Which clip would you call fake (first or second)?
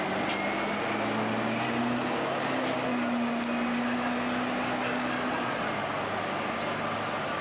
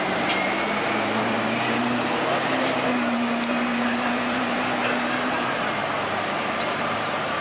second